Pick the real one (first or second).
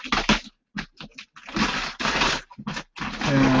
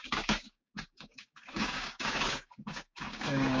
first